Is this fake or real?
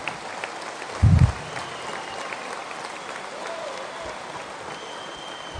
real